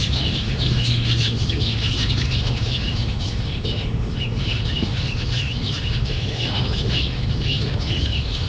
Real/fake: fake